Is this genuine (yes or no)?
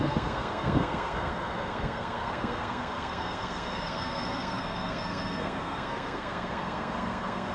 no